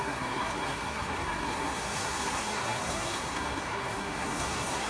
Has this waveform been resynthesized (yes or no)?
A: yes